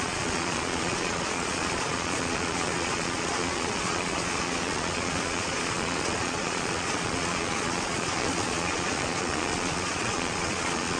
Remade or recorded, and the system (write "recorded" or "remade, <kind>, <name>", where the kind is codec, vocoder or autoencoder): remade, vocoder, Vocos